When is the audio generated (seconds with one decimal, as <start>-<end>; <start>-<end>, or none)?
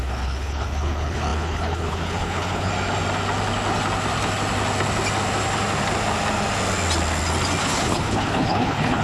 0.0-2.7; 7.6-9.0